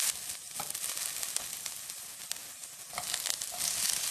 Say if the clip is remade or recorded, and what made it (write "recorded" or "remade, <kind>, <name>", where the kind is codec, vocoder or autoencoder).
recorded